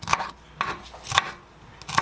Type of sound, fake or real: real